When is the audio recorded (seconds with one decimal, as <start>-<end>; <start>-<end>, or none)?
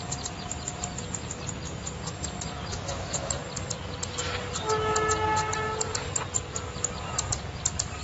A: 0.0-2.7; 3.4-8.0